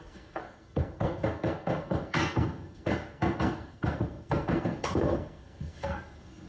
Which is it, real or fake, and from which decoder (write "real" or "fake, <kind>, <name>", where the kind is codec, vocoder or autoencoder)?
fake, codec, SNAC